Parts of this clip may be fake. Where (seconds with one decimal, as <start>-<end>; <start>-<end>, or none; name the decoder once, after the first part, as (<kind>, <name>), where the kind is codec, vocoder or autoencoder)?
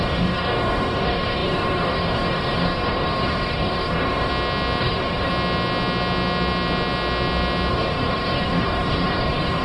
0.0-4.3 (codec, DAC); 4.8-5.3; 7.7-9.6